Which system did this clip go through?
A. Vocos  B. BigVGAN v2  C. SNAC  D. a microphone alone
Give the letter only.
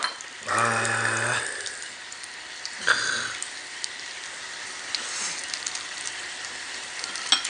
D